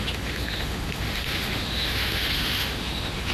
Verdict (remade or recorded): remade